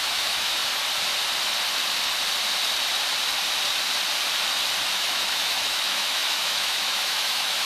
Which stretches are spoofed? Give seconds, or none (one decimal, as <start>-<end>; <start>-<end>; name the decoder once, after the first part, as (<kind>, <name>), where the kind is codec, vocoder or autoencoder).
0.0-0.6 (autoencoder, DAC-VAE); 4.9-7.7